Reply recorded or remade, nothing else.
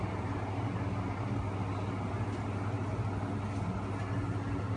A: recorded